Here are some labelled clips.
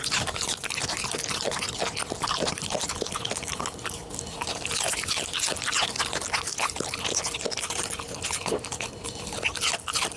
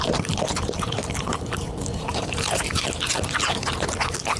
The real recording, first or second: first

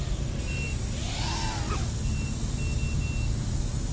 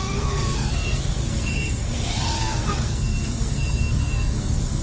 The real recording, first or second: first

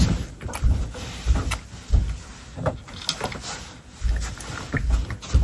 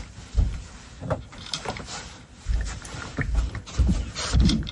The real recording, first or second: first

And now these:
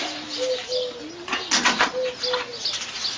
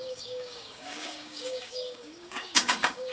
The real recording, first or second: first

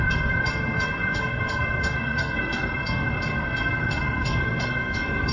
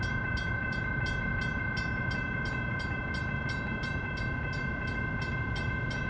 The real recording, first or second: second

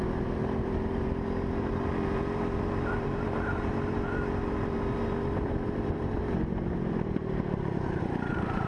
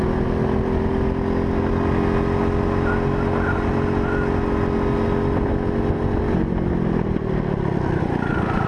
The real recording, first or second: second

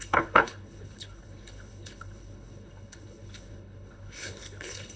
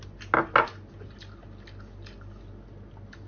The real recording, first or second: second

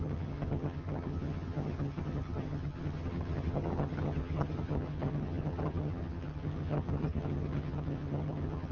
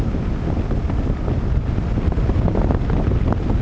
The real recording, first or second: second